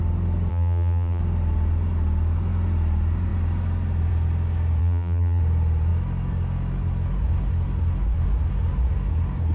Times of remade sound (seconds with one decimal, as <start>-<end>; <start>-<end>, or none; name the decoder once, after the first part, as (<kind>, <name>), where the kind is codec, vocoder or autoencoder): 0.5-1.2 (vocoder, BigVGAN v2); 4.8-5.4